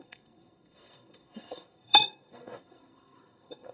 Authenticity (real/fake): fake